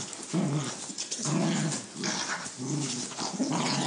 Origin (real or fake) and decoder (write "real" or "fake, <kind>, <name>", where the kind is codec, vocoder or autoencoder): real